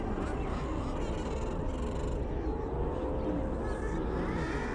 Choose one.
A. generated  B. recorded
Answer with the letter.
B